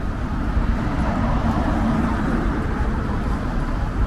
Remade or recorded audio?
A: remade